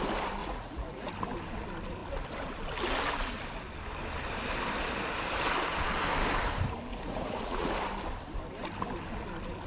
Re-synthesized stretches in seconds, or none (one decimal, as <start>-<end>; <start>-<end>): 0.4-1.1; 6.9-7.7